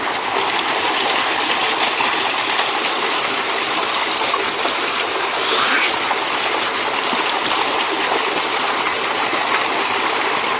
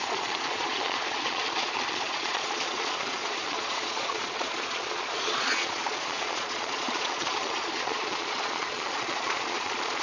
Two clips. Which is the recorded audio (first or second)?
first